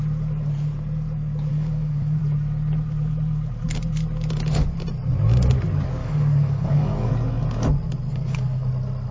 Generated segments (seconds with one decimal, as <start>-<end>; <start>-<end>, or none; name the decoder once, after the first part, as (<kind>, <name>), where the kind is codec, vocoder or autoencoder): 1.5-2.2 (codec, DAC); 6.0-7.1; 8.1-8.7